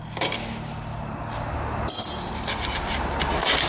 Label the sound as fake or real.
real